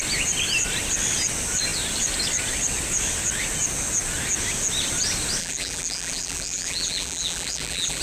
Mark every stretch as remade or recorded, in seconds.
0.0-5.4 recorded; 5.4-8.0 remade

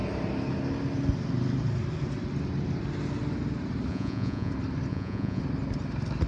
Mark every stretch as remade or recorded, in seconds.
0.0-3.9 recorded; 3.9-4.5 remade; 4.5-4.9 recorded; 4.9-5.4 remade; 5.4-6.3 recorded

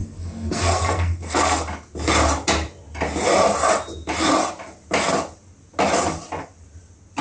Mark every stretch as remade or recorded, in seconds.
0.0-1.6 remade; 1.6-7.2 recorded

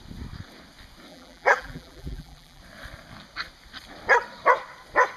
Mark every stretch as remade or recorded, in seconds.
0.0-1.1 recorded; 1.1-2.6 remade; 2.6-5.2 recorded

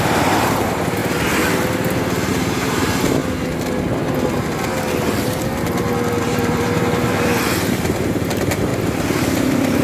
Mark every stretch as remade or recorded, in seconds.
0.0-1.0 remade; 1.0-2.3 recorded; 2.3-3.2 remade; 3.2-6.2 recorded; 6.2-8.7 remade; 8.7-9.2 recorded; 9.2-9.8 remade